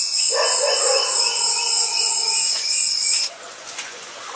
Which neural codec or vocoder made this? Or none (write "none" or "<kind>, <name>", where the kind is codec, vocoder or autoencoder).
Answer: vocoder, Vocos